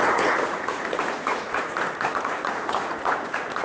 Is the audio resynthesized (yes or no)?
yes